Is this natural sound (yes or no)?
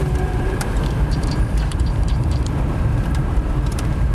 no